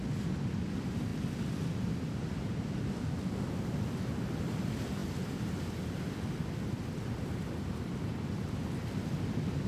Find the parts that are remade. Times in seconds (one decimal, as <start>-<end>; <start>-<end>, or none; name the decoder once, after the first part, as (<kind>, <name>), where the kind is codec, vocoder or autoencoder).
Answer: none